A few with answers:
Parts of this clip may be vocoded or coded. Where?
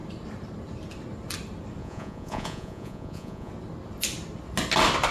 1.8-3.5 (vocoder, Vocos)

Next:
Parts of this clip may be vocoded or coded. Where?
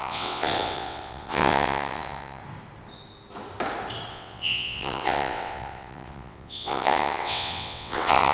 0.0-2.4 (vocoder, WaveNeXt); 4.1-8.3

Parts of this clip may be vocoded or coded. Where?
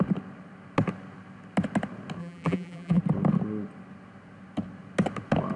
2.2-3.0 (vocoder, BigVGAN v2)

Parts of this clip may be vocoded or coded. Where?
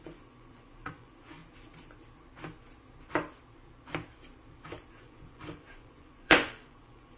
0.0-1.4 (vocoder, Vocos); 4.9-7.2